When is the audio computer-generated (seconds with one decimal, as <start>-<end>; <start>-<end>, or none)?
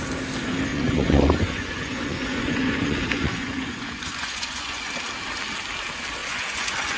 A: 0.7-4.9; 6.2-7.0